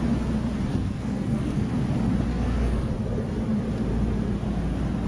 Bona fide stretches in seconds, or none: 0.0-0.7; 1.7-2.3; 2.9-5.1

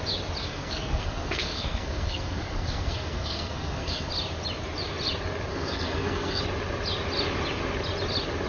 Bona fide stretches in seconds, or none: 0.0-0.4; 4.1-5.5; 6.4-8.5

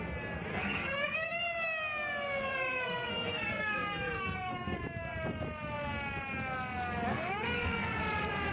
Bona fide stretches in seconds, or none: 0.0-0.5; 1.4-2.5; 4.8-7.1; 8.0-8.5

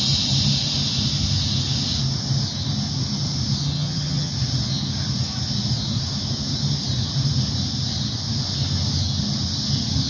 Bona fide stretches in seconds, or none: 0.0-3.6; 4.3-10.1

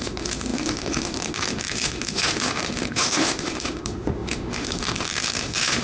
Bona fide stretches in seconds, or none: none